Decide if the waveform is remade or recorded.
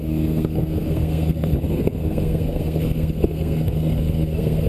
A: remade